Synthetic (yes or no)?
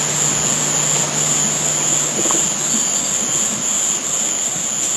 no